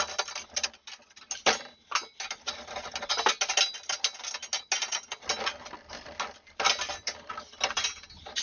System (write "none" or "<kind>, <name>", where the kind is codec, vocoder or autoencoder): none